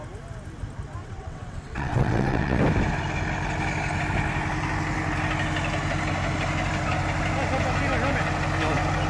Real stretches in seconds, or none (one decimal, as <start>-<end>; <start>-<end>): 0.0-1.0; 2.6-9.1